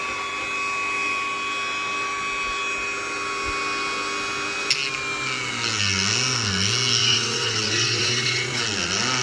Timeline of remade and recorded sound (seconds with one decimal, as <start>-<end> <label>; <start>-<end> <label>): 0.0-7.0 recorded; 7.0-8.6 remade; 8.6-9.2 recorded